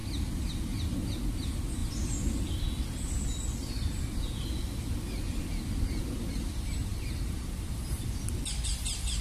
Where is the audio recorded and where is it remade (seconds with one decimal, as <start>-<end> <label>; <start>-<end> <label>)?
0.0-1.8 recorded; 1.8-2.6 remade; 2.6-9.2 recorded